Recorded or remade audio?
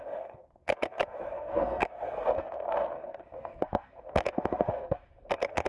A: remade